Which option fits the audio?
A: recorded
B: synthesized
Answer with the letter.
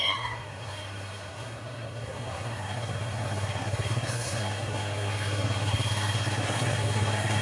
B